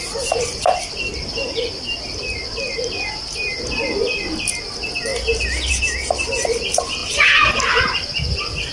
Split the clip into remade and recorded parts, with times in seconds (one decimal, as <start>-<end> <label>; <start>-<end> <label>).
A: 0.0-8.7 recorded